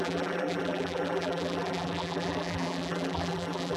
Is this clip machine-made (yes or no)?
yes